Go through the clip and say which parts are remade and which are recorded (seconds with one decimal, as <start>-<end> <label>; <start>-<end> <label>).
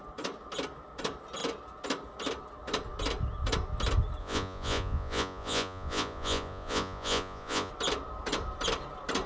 0.0-4.2 recorded; 4.2-7.7 remade; 7.7-9.3 recorded